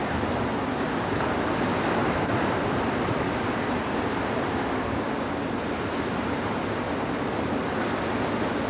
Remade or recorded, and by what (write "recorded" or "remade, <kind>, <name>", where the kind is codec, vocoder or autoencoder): recorded